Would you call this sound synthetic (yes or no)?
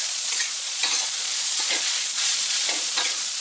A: yes